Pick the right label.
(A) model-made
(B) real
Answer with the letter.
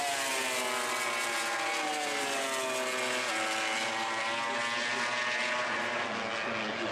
B